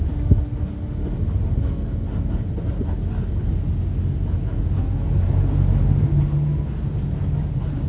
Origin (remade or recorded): recorded